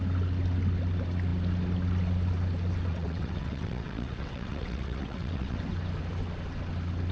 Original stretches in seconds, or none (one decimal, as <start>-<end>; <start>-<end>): 0.0-2.9; 5.6-7.1